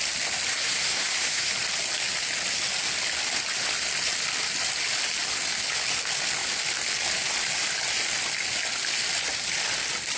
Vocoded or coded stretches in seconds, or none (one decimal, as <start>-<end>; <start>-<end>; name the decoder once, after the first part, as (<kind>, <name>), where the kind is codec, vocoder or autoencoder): 0.5-1.5 (codec, SNAC)